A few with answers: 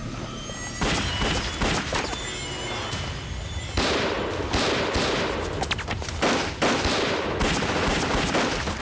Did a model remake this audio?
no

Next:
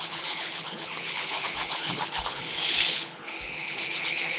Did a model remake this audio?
yes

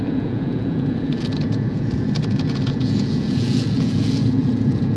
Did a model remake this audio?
yes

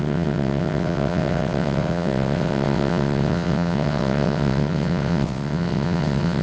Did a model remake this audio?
yes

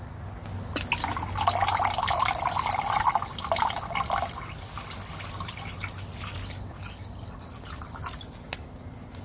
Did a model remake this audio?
no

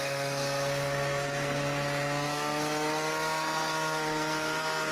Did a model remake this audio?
yes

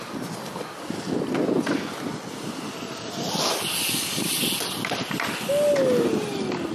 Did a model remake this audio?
no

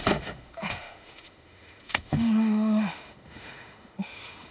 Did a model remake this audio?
yes